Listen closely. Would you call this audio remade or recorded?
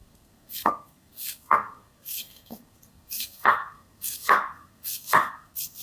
remade